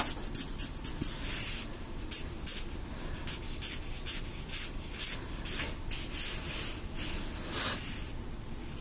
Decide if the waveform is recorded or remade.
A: recorded